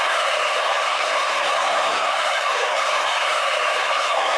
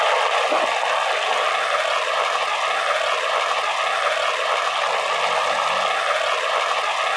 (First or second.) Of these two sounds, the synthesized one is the first